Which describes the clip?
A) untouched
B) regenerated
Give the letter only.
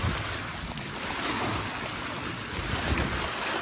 A